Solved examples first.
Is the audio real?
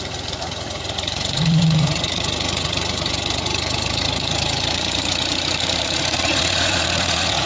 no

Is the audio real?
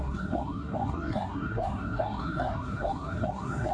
no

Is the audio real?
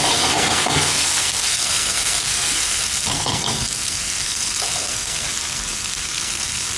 no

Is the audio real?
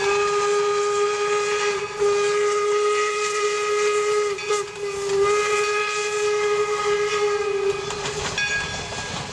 yes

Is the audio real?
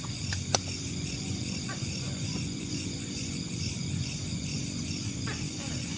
no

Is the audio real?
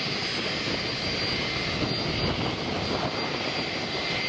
yes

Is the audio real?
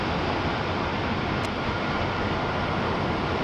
yes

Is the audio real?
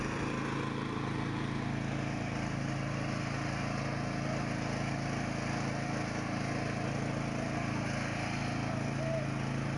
yes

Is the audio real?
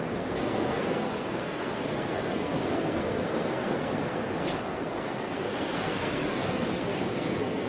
no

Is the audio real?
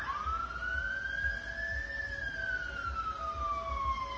yes